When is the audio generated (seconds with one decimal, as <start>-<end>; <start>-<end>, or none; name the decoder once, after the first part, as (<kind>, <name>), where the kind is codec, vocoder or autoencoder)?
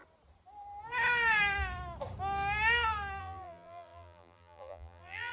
3.2-5.3 (vocoder, BigVGAN v2)